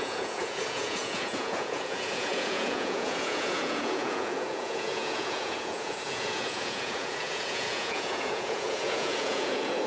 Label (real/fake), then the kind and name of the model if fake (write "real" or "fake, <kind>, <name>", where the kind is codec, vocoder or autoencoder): fake, vocoder, Vocos